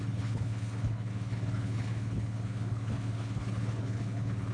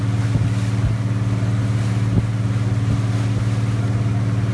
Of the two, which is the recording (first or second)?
second